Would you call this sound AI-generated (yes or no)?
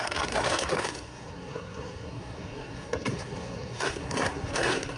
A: yes